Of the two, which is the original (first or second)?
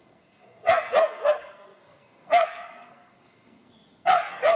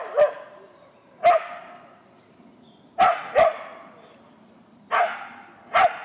second